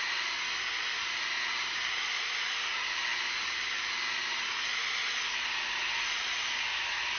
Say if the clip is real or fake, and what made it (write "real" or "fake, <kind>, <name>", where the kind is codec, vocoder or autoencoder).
real